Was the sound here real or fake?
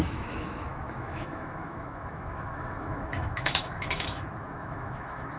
fake